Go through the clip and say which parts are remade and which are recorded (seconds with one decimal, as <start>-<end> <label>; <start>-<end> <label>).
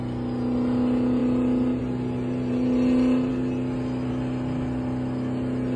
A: 0.0-5.8 recorded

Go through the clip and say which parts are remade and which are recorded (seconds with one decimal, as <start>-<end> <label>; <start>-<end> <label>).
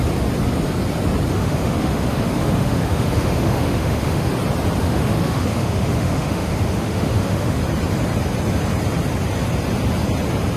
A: 0.0-1.3 recorded; 1.3-4.3 remade; 4.3-4.8 recorded; 4.8-7.6 remade; 7.6-10.6 recorded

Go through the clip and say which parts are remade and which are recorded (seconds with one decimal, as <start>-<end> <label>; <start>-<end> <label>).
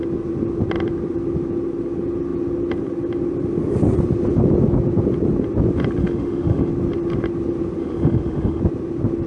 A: 0.0-6.0 recorded; 6.0-6.7 remade; 6.7-7.8 recorded; 7.8-8.6 remade; 8.6-9.3 recorded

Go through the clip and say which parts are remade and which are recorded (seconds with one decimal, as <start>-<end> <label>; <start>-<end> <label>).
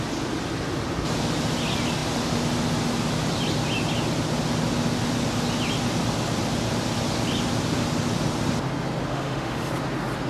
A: 0.0-9.1 recorded; 9.1-9.7 remade; 9.7-10.3 recorded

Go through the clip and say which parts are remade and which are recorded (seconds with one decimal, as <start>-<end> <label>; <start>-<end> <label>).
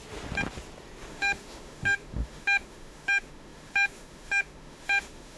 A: 0.0-1.1 recorded; 1.1-5.4 remade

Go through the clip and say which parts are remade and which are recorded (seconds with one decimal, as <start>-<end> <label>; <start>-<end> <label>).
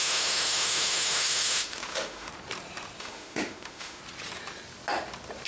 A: 0.0-2.3 remade; 2.3-3.0 recorded; 3.0-4.0 remade; 4.0-5.5 recorded